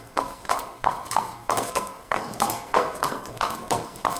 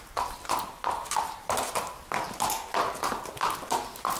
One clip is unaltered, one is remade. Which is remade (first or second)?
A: first